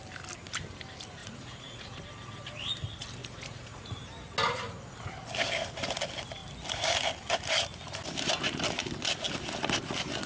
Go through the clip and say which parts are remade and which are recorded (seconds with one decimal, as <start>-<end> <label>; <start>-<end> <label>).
0.0-1.2 recorded; 1.2-2.0 remade; 2.0-3.2 recorded; 3.2-4.0 remade; 4.0-10.3 recorded